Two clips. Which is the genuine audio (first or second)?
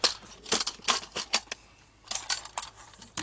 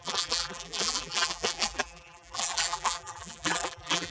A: first